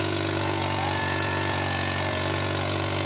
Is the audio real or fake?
fake